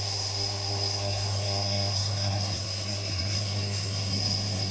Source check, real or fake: fake